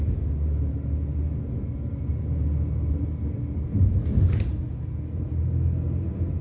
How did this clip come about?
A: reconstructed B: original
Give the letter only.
B